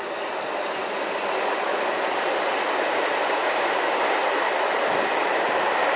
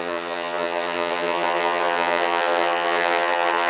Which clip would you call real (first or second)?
first